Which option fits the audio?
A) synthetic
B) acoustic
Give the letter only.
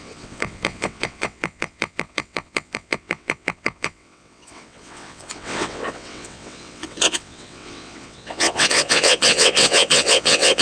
A